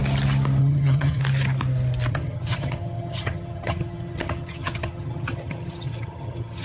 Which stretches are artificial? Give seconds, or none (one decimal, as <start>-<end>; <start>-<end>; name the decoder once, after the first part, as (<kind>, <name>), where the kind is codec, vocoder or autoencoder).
0.6-1.2 (vocoder, HiFi-GAN); 2.1-6.6